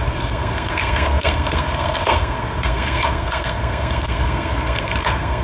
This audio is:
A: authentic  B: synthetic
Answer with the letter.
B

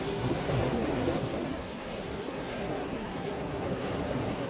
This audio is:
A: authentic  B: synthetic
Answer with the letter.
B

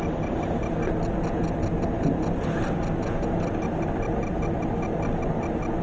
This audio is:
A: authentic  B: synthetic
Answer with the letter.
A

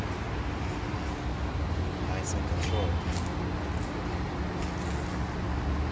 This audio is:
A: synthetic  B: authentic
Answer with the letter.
B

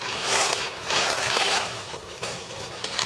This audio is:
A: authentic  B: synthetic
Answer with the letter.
B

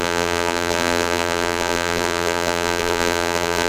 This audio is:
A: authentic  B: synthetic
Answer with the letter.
B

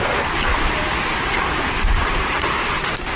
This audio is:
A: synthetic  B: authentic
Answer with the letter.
B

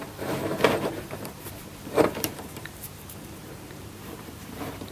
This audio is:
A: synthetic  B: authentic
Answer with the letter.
A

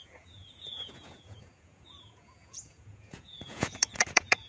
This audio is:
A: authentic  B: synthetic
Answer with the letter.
B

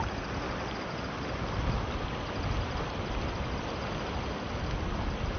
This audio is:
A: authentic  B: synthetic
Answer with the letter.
A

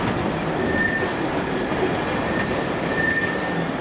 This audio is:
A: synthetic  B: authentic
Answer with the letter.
B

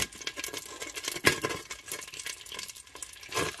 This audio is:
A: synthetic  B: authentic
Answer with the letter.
B